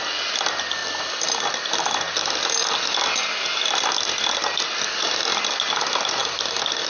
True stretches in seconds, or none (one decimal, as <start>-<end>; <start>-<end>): 0.0-6.9